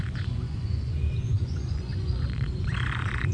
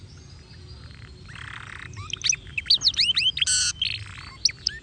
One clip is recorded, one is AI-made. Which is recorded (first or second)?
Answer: second